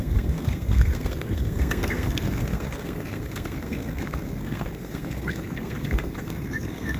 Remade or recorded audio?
remade